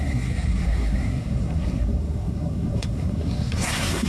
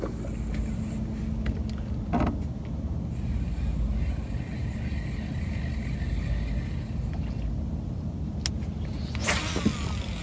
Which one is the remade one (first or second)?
first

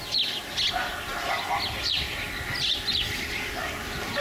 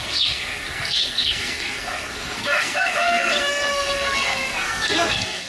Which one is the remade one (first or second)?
second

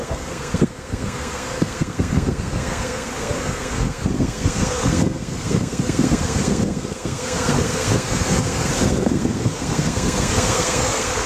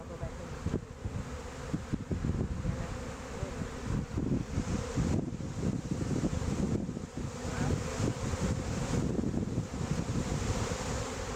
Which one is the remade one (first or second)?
first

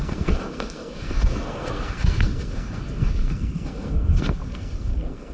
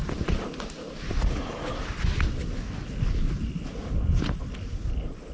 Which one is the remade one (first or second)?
first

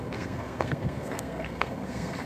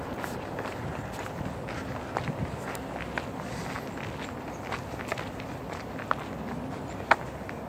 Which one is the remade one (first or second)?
first